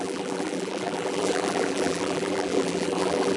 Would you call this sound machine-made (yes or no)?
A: yes